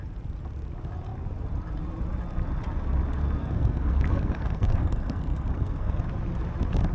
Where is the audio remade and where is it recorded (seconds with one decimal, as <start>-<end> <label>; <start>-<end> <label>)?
0.0-3.4 recorded; 3.4-6.0 remade; 6.0-6.9 recorded